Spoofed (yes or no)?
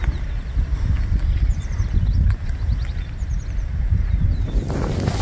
no